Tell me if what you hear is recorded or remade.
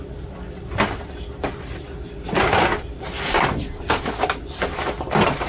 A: recorded